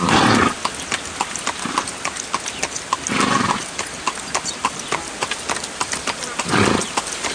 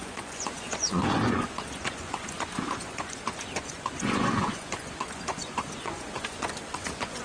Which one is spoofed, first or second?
second